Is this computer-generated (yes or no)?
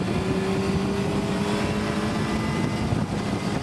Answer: no